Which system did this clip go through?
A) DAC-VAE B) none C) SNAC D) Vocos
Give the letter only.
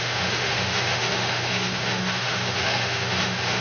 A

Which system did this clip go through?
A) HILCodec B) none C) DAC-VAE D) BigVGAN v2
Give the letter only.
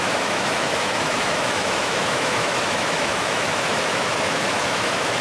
C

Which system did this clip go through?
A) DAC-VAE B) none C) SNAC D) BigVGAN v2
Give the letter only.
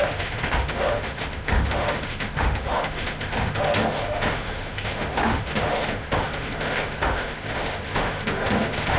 A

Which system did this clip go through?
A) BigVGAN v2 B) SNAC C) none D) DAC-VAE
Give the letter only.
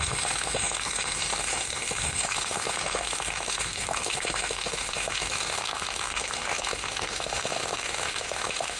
D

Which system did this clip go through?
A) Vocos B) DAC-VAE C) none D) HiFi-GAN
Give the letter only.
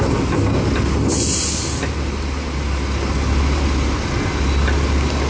C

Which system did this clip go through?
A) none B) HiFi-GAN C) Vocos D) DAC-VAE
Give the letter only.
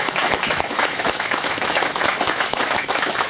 D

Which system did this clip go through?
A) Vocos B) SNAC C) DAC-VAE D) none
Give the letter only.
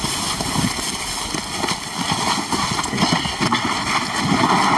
D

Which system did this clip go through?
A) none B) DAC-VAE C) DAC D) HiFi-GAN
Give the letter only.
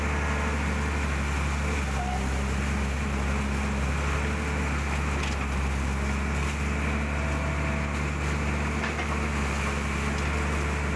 A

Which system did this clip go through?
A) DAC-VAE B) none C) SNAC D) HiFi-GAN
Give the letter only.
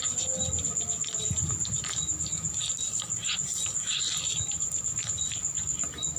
B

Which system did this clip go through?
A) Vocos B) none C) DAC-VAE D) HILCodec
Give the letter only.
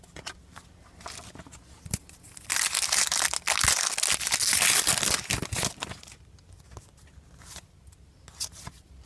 B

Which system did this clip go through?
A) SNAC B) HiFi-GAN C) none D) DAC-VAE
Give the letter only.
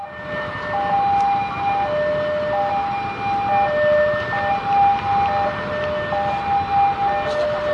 C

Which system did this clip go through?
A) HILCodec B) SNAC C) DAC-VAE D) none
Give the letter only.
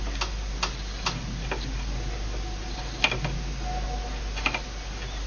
D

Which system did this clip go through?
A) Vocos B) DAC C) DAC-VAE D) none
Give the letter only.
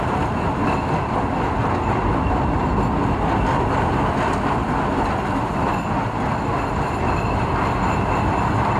D